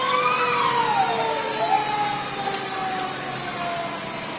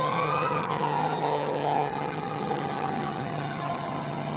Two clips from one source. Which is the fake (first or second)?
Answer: second